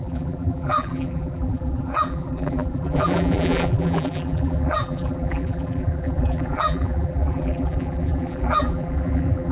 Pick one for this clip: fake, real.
fake